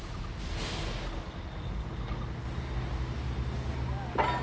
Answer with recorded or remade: recorded